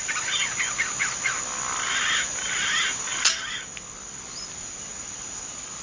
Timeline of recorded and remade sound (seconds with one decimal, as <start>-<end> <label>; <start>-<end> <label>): 0.0-5.8 recorded